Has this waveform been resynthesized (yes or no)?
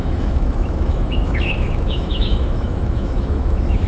yes